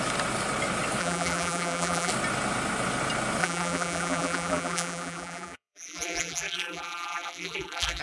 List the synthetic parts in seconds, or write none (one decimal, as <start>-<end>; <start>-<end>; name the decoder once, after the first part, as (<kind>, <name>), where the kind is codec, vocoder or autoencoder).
1.0-2.1 (vocoder, BigVGAN v2); 3.4-8.0